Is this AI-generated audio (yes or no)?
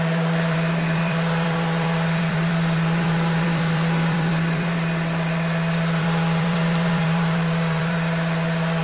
yes